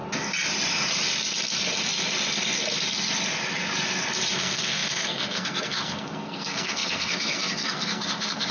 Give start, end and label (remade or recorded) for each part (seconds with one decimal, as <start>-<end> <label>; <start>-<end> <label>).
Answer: 0.0-4.3 recorded; 4.3-8.5 remade